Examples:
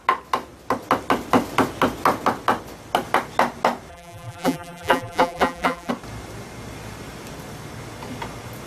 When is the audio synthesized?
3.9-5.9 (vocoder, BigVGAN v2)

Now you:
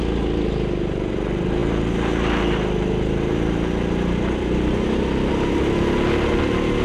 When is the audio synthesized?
none

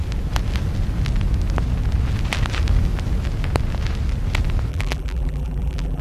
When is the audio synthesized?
4.7-6.0 (vocoder, BigVGAN v2)